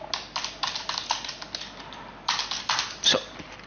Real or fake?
real